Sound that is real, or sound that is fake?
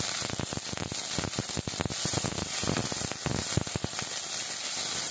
real